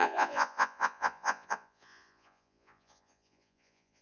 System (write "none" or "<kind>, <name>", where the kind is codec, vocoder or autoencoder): vocoder, Vocos